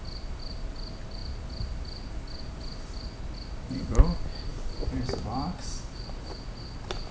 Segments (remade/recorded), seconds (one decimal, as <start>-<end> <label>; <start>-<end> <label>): 0.0-7.1 recorded